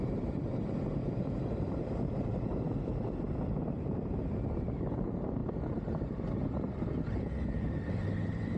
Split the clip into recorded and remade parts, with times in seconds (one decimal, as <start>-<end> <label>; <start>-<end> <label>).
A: 0.0-4.2 remade; 4.2-5.0 recorded; 5.0-5.4 remade; 5.4-7.5 recorded; 7.5-8.6 remade